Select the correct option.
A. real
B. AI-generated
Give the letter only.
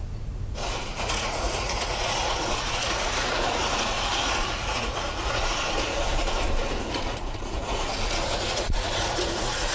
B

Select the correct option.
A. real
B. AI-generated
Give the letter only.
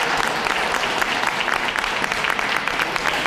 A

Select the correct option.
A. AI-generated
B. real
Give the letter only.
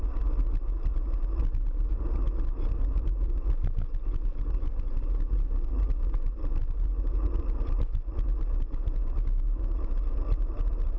B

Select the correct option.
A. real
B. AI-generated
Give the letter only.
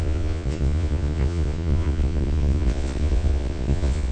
B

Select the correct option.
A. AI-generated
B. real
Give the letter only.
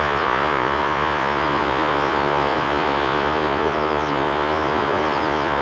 A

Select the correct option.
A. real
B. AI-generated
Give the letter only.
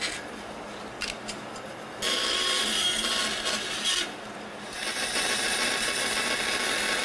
A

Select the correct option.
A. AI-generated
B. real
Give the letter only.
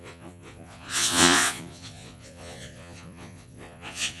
A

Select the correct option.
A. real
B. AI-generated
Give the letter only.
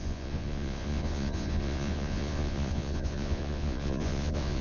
B